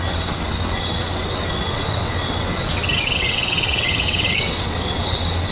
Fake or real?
fake